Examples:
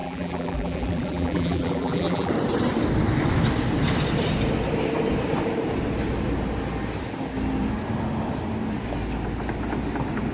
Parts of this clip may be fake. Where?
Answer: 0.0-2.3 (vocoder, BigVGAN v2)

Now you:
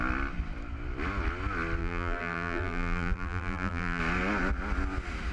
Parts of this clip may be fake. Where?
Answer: 1.8-4.0 (vocoder, BigVGAN v2)